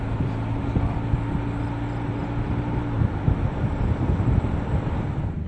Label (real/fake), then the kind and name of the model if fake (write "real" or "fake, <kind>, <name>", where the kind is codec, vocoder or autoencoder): real